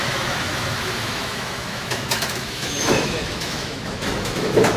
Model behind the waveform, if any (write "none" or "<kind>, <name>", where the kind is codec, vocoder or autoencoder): autoencoder, DAC-VAE